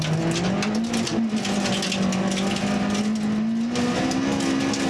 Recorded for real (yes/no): yes